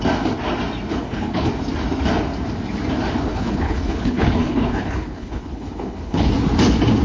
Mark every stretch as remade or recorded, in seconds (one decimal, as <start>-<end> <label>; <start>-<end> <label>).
0.0-0.9 recorded; 0.9-1.5 remade; 1.5-3.3 recorded; 3.3-6.3 remade; 6.3-7.0 recorded